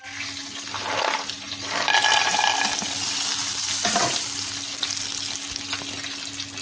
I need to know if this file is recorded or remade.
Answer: recorded